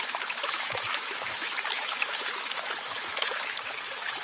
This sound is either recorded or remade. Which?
remade